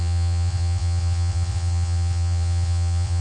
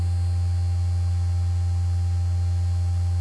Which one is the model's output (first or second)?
first